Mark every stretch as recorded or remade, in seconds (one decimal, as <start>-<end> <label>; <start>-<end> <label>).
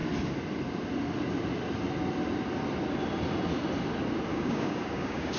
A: 0.0-4.3 recorded; 4.3-5.4 remade